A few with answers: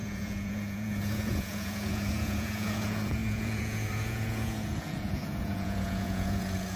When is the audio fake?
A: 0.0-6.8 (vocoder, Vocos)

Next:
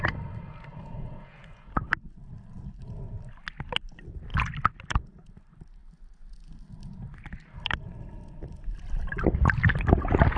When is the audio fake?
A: 0.7-1.7 (vocoder, Vocos)

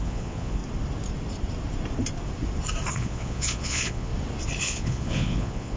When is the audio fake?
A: 0.0-0.6 (vocoder, Vocos); 2.9-4.1; 4.6-5.8

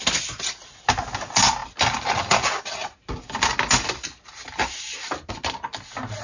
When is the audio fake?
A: none

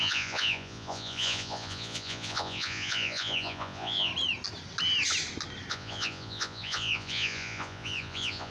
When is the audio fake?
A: 0.0-4.1 (vocoder, Vocos); 5.7-8.5